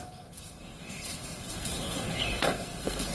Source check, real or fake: fake